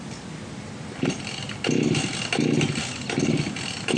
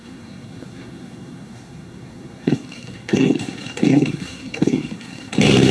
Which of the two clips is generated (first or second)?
second